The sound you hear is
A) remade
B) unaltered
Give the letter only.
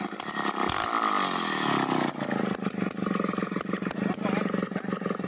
B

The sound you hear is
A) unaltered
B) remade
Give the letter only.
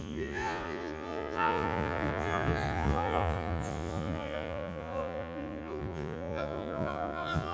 B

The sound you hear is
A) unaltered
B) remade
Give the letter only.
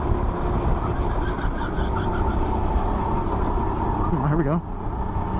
A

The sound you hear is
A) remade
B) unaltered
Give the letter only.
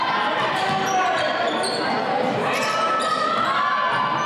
B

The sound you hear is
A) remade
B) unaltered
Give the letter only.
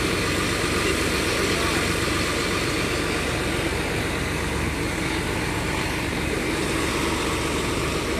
B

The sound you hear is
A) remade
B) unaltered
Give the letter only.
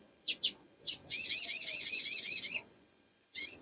A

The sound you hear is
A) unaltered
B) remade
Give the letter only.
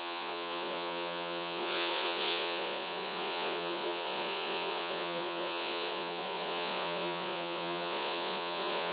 B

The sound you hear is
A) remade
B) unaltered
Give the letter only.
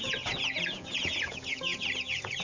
A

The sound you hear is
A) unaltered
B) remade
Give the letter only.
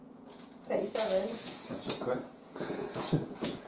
B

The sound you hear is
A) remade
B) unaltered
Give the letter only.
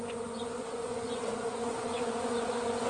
A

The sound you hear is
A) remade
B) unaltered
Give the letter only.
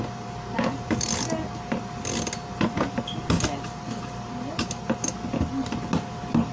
B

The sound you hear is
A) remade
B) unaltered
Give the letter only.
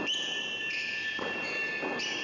B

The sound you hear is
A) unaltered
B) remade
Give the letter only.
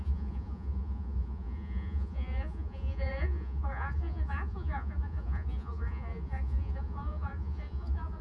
B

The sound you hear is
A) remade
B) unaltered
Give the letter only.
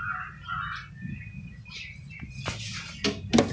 B